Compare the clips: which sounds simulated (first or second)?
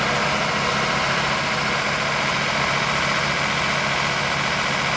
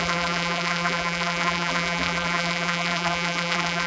second